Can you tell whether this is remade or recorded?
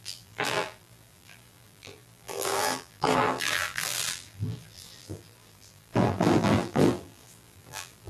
remade